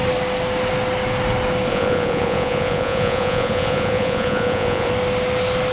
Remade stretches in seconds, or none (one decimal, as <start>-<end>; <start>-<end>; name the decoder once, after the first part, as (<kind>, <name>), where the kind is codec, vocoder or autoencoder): 1.7-4.9 (vocoder, Vocos)